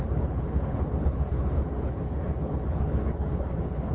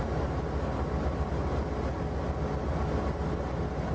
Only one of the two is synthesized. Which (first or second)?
first